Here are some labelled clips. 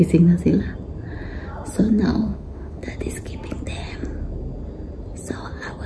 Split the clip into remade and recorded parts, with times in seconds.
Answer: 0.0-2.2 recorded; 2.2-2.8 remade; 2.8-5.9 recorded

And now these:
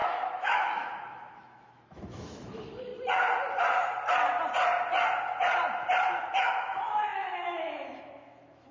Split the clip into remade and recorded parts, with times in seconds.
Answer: 0.0-2.9 remade; 2.9-6.2 recorded; 6.2-8.7 remade

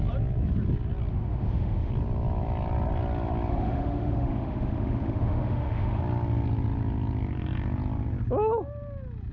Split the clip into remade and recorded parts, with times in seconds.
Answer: 0.0-1.1 recorded; 1.1-1.9 remade; 1.9-3.5 recorded; 3.5-6.0 remade; 6.0-9.3 recorded